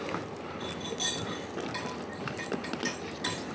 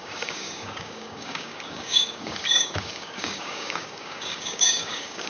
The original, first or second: first